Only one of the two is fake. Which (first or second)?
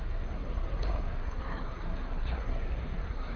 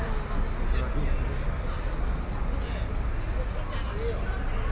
first